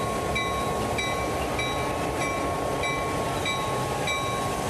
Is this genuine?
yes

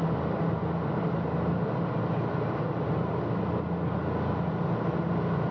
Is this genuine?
yes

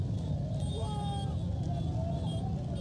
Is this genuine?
yes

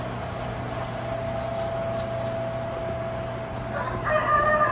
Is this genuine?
yes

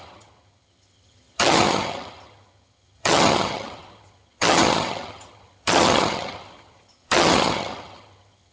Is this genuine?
no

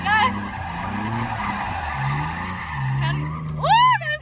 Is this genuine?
yes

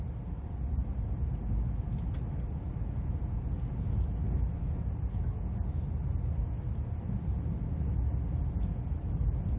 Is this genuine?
yes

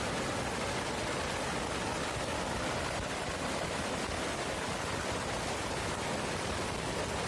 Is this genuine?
yes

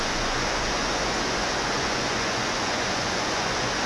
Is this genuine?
no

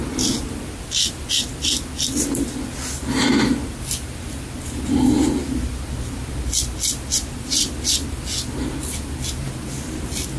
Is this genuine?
yes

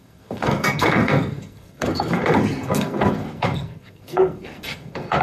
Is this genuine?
no